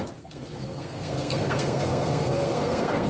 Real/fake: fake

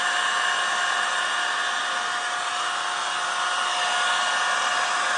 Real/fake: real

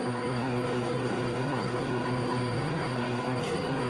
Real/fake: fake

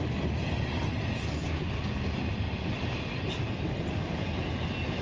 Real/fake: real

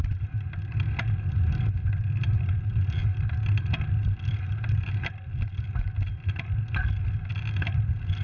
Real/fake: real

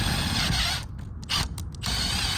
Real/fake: real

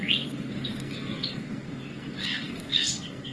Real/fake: fake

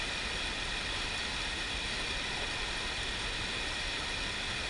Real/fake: real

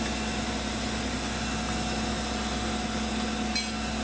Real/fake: real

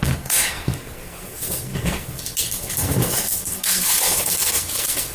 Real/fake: fake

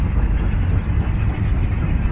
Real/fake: real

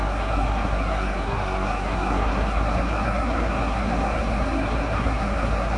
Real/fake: fake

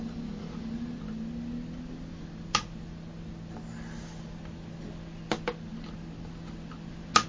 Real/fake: real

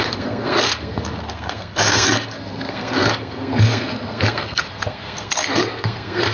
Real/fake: fake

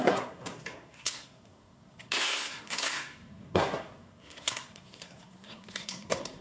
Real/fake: fake